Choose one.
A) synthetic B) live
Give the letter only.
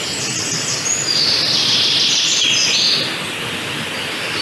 B